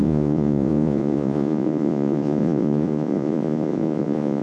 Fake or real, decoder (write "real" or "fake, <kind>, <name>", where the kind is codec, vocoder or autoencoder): fake, vocoder, Vocos